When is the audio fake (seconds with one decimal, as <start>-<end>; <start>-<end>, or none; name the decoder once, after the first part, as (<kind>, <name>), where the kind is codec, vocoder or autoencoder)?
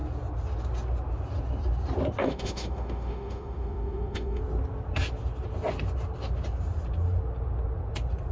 2.2-4.4 (autoencoder, DAC-VAE)